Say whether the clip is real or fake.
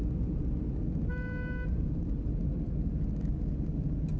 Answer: real